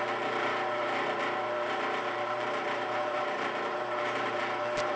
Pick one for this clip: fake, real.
fake